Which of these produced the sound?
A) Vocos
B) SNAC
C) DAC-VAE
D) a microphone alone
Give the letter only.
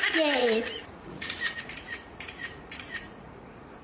A